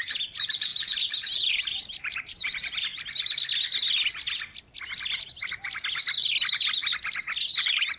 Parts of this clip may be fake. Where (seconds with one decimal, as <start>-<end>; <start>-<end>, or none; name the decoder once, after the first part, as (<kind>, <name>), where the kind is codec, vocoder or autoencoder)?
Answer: 0.0-2.9 (vocoder, BigVGAN v2); 7.5-8.0